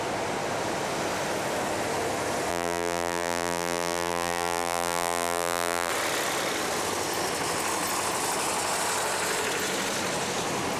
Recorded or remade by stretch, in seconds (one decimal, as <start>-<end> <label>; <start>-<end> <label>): 0.0-2.5 recorded; 2.5-5.9 remade; 5.9-10.8 recorded